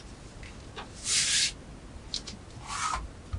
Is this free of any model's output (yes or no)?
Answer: yes